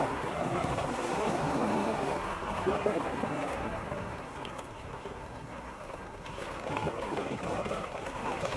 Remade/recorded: remade